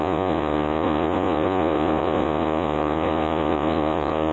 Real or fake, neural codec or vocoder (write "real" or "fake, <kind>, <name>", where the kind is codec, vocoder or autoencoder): fake, vocoder, Vocos